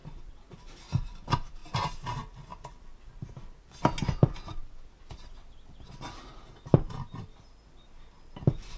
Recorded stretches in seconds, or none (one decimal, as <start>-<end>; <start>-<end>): 0.8-2.5; 3.1-8.8